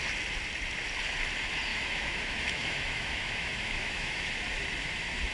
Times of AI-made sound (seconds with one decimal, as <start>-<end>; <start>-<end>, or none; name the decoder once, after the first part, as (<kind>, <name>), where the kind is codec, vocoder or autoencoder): 1.7-4.3 (autoencoder, DAC-VAE)